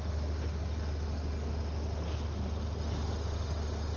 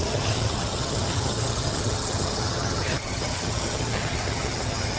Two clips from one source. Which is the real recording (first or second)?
first